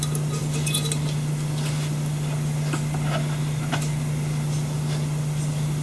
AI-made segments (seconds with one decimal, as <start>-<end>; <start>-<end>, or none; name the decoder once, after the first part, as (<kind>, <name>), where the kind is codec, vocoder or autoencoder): none